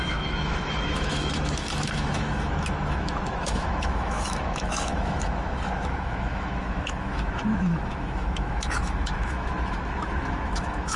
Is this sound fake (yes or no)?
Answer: yes